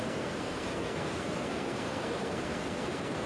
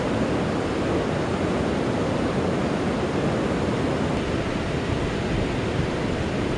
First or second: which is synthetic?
first